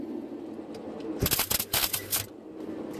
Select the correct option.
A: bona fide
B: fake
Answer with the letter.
A